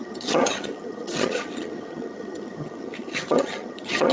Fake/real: fake